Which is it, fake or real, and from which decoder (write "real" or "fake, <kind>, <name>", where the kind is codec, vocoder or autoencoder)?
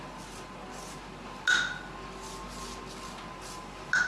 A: real